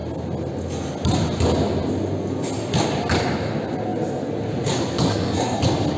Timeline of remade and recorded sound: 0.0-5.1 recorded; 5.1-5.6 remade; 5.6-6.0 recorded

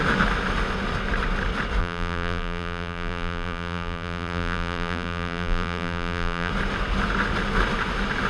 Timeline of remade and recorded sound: 0.0-1.8 recorded; 1.8-6.5 remade; 6.5-8.3 recorded

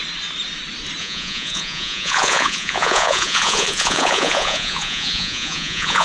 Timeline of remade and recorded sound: 0.0-1.0 recorded; 1.0-6.0 remade

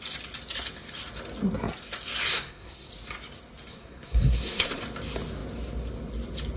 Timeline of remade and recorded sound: 0.0-2.3 recorded; 2.3-2.9 remade; 2.9-3.7 recorded; 3.7-4.8 remade; 4.8-6.6 recorded

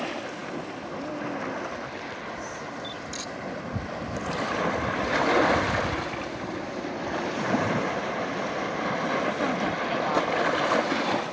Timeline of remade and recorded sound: 0.0-11.3 recorded

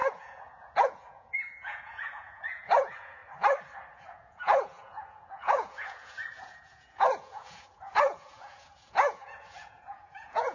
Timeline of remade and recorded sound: 0.0-3.2 remade; 3.2-3.9 recorded; 3.9-10.5 remade

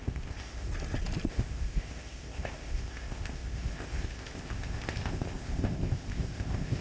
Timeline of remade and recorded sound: 0.0-0.7 remade; 0.7-1.3 recorded; 1.3-6.8 remade